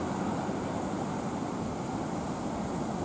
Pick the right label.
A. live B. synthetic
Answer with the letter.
A